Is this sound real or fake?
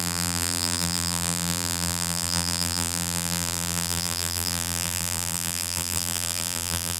fake